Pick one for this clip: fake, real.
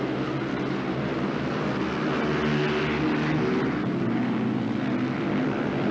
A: real